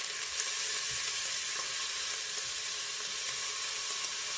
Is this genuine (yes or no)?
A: yes